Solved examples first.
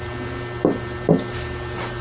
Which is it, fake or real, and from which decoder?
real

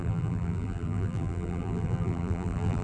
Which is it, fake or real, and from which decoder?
fake, vocoder, BigVGAN v2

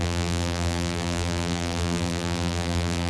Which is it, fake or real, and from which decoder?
fake, vocoder, BigVGAN v2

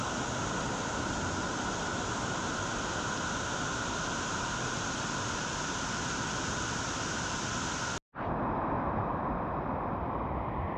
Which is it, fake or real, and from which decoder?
real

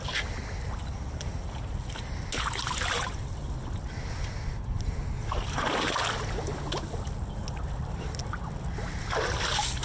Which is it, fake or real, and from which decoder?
real